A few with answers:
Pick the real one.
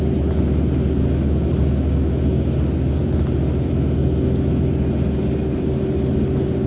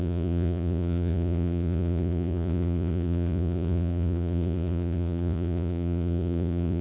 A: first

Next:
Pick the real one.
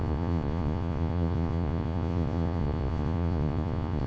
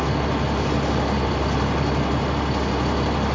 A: second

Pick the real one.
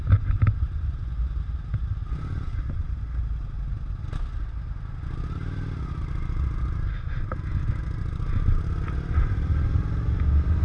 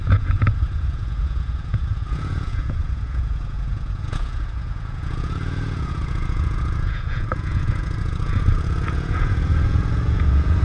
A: first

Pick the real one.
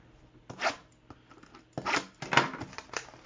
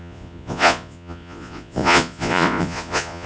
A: first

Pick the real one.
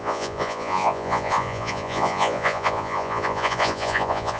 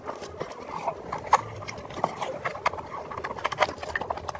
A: second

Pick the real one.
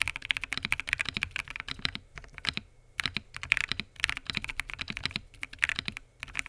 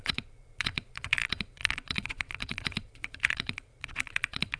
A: first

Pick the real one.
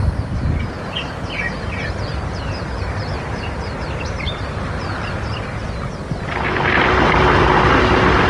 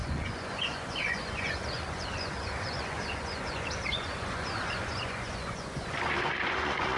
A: first